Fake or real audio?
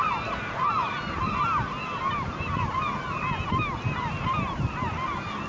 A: real